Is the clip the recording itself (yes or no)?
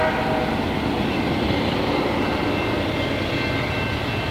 yes